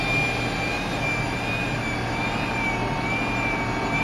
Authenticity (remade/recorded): recorded